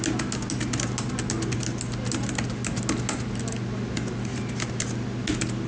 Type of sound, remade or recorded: recorded